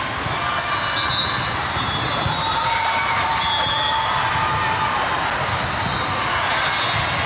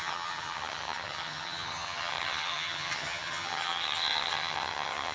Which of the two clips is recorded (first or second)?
first